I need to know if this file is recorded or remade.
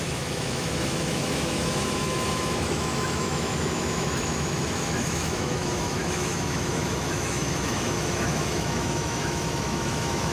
remade